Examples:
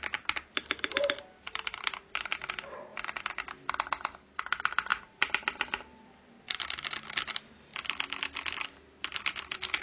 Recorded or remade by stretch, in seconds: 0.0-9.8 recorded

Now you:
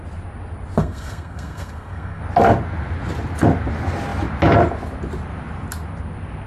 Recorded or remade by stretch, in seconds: 0.0-0.8 recorded; 0.8-2.2 remade; 2.2-6.5 recorded

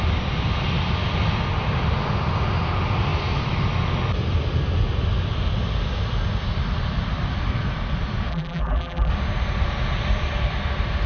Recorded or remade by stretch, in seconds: 0.0-8.3 recorded; 8.3-9.1 remade; 9.1-11.1 recorded

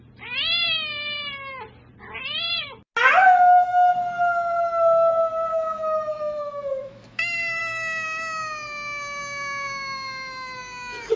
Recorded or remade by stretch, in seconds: 0.0-3.2 recorded; 3.2-3.9 remade; 3.9-5.5 recorded; 5.5-7.6 remade; 7.6-11.2 recorded

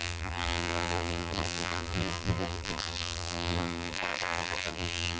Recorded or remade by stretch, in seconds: 0.0-5.2 remade

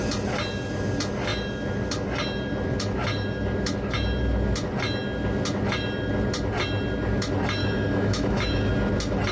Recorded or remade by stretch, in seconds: 0.0-7.6 recorded; 7.6-8.7 remade; 8.7-9.3 recorded

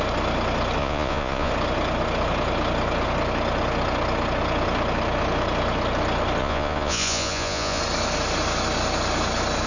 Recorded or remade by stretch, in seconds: 0.0-0.8 recorded; 0.8-1.5 remade; 1.5-6.4 recorded; 6.4-7.8 remade; 7.8-9.7 recorded

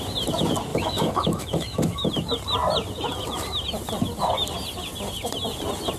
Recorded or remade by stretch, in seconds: 0.0-0.7 recorded; 0.7-2.1 remade; 2.1-6.0 recorded